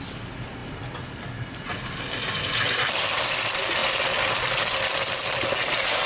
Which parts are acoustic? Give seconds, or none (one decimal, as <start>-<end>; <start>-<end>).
0.0-6.1